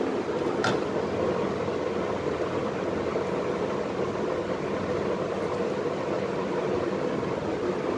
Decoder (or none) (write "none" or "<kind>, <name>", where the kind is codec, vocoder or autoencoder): none